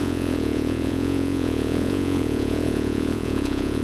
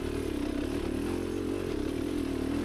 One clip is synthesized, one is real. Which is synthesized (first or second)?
first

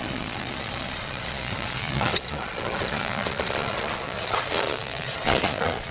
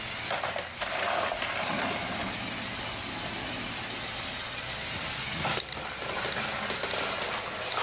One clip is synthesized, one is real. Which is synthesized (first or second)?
first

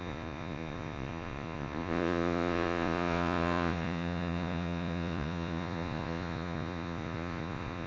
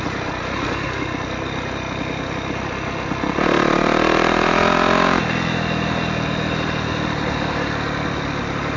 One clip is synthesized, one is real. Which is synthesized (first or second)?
first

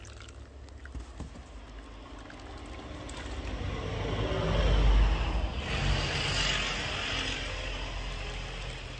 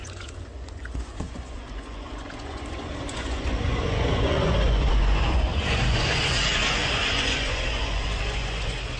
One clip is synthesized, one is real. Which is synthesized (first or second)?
second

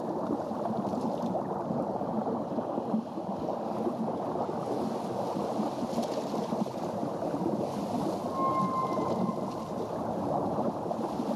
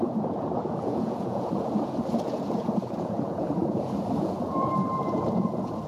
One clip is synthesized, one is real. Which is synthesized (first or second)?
second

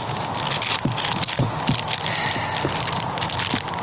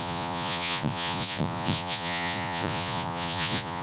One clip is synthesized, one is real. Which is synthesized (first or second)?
second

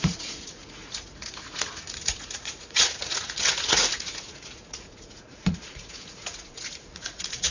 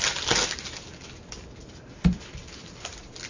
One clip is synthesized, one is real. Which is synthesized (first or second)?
first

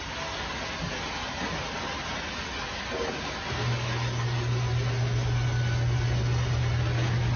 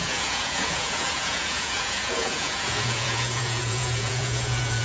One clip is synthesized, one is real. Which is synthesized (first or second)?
second